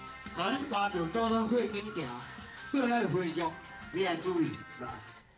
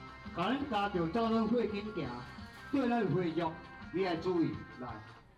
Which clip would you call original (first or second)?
second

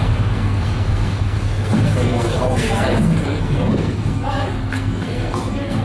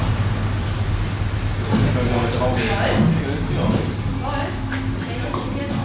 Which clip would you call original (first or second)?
second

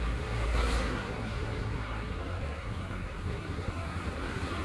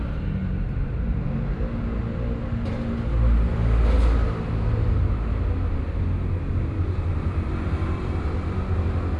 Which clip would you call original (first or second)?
second